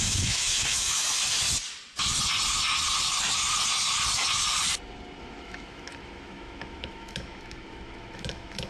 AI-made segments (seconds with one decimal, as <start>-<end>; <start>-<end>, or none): 0.0-1.2; 5.2-8.7

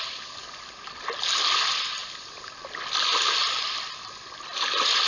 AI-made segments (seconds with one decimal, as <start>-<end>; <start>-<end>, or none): none

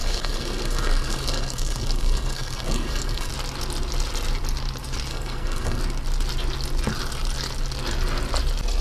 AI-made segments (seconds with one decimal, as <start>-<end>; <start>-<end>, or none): 0.0-3.3; 5.1-5.8

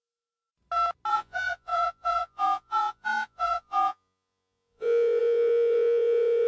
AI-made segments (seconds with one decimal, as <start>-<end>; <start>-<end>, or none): 0.0-0.5; 1.1-6.5

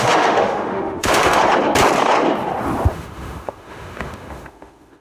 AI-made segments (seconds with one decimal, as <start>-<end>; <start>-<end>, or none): 0.0-1.4; 2.9-5.0

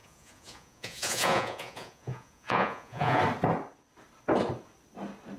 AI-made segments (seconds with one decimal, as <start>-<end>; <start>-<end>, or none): 0.0-3.2

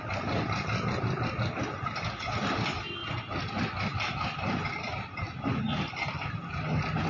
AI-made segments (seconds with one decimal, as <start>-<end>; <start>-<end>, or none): none